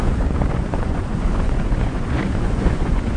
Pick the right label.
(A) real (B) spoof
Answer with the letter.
B